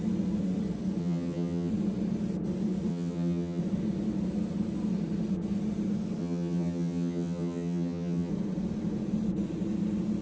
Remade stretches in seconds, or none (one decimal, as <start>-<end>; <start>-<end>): 1.0-1.7; 2.9-3.6; 6.2-8.3